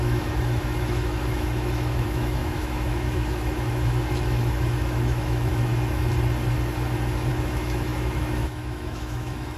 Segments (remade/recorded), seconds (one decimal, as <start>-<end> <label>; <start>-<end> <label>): 0.0-5.7 remade; 5.7-7.3 recorded; 7.3-9.6 remade